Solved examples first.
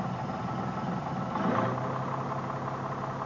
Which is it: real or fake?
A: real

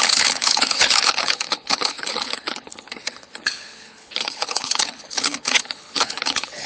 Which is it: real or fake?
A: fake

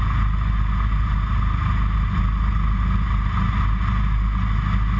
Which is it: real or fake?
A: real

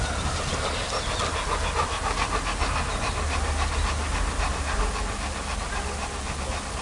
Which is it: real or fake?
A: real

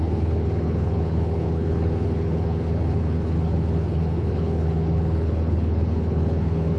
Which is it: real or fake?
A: fake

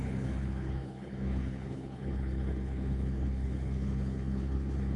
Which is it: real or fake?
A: fake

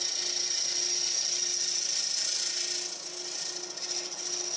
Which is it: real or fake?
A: real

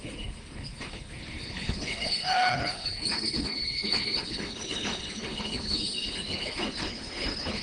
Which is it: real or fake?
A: fake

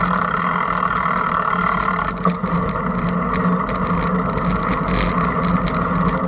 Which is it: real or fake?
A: real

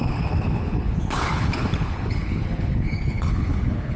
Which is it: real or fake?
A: fake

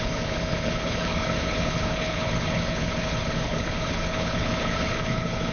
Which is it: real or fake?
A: fake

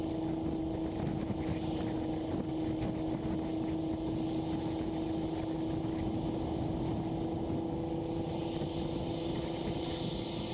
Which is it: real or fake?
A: real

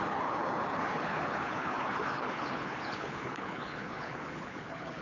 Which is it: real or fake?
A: fake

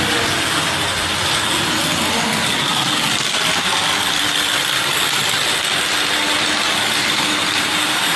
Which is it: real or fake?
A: real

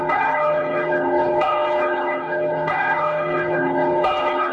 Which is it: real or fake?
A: fake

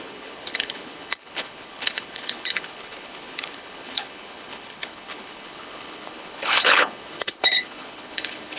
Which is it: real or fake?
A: fake